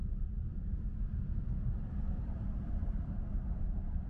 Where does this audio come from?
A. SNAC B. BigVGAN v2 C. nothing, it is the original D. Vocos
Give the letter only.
B